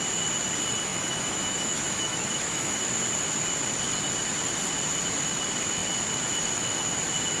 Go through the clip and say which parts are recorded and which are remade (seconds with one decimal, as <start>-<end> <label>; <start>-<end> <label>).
0.0-0.9 recorded; 0.9-2.9 remade; 2.9-7.4 recorded